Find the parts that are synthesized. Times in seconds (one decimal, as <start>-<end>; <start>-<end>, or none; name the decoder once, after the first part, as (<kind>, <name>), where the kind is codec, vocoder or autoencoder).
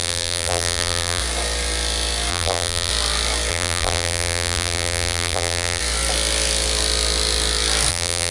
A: 0.0-1.2 (vocoder, BigVGAN v2); 2.3-2.9; 3.5-5.8; 7.9-8.3